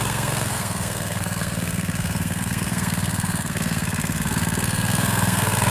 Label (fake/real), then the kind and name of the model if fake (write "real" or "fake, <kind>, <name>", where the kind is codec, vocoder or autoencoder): fake, codec, SNAC